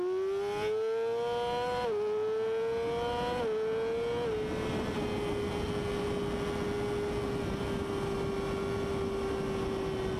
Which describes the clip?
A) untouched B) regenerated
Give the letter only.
A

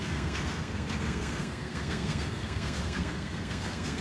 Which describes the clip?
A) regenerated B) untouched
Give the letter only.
A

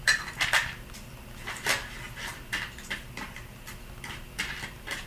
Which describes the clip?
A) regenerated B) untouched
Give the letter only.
B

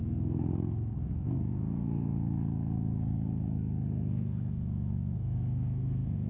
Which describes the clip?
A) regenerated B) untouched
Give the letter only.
A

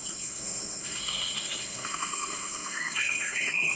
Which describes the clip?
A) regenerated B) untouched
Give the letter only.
A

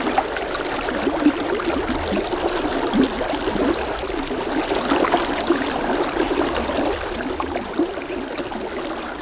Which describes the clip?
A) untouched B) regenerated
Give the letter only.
A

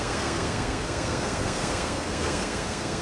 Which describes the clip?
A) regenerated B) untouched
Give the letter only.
A